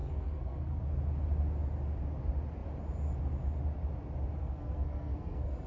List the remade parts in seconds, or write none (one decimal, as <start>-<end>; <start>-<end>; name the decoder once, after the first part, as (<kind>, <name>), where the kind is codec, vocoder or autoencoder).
0.0-0.8 (codec, SNAC); 4.4-5.7